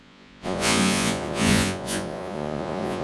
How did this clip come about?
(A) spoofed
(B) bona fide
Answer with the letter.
A